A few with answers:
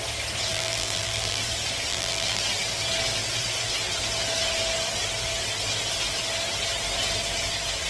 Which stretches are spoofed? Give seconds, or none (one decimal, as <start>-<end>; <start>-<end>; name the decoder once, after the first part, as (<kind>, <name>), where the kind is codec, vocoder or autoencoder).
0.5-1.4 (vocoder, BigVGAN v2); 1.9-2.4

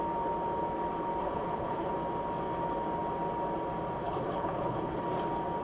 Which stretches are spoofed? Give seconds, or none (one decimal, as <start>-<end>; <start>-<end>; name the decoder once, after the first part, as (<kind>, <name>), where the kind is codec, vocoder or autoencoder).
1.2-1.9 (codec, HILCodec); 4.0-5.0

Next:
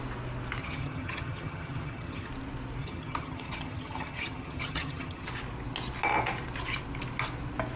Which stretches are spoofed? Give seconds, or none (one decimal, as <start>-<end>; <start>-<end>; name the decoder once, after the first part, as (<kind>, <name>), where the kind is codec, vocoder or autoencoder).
0.6-2.3 (vocoder, HiFi-GAN); 2.8-5.3

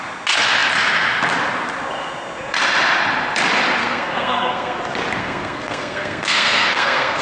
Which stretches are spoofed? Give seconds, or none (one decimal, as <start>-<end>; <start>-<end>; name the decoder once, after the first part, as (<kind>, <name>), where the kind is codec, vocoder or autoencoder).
3.8-4.8 (codec, SNAC); 5.2-7.2

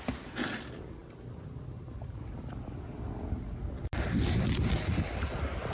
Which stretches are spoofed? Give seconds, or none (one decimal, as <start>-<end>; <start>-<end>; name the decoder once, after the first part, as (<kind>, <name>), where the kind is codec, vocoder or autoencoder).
none

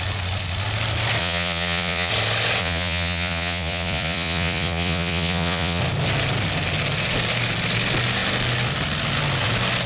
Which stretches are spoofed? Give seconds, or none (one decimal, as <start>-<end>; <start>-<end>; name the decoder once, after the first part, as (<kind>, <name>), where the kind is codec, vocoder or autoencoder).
1.2-2.1 (vocoder, Vocos); 2.6-5.8

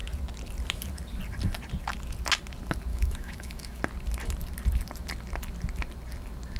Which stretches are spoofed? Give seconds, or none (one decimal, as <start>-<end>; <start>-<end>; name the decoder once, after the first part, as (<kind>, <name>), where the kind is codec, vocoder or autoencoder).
2.9-3.8 (autoencoder, DAC-VAE)